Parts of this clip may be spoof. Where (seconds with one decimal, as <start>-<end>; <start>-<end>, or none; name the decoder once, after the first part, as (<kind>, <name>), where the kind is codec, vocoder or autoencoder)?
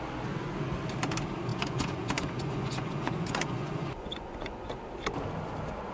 1.5-4.7 (vocoder, Vocos)